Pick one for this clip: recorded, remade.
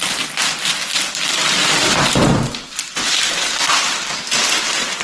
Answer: recorded